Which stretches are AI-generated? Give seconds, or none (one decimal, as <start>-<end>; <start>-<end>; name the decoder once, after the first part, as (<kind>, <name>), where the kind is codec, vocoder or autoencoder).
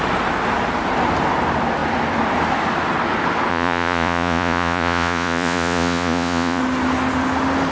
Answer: 3.5-6.6 (vocoder, Vocos)